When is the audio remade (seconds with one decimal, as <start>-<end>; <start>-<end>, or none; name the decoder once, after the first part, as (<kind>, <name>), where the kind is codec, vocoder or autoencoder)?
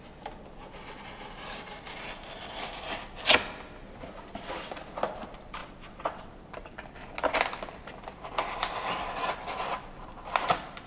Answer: 5.6-6.3 (vocoder, WaveNeXt)